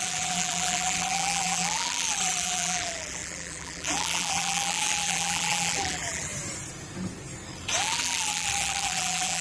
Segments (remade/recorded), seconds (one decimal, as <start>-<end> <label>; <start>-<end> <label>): 0.0-6.3 remade; 6.3-7.8 recorded; 7.8-9.4 remade